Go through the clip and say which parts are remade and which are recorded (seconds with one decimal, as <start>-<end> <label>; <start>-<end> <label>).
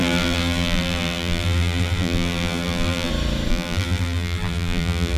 0.0-3.1 remade; 3.1-3.5 recorded; 3.5-5.2 remade